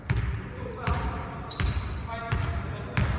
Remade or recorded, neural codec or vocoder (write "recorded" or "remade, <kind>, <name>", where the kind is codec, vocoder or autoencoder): recorded